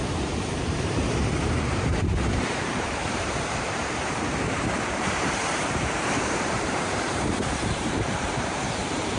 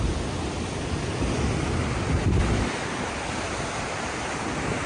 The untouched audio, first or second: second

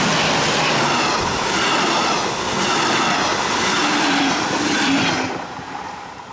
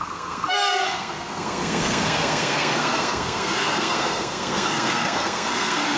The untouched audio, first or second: first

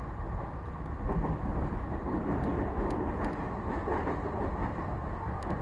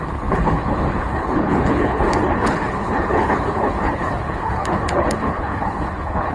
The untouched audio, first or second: first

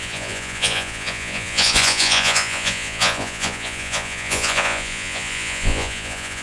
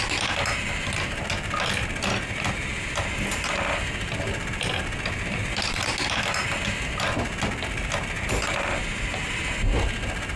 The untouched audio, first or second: second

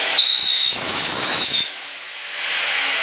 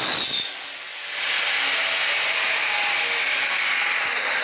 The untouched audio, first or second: second